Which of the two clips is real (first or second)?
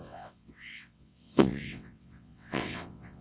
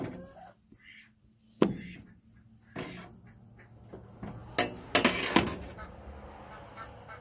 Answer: second